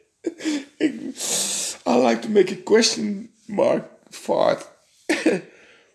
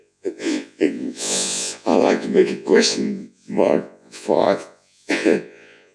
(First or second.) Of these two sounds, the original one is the first